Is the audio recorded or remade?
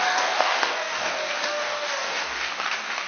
remade